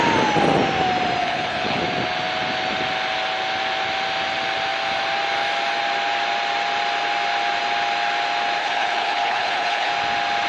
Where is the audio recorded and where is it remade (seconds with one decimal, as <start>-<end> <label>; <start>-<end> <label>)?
0.0-1.2 recorded; 1.2-1.8 remade; 1.8-8.6 recorded; 8.6-9.9 remade; 9.9-10.5 recorded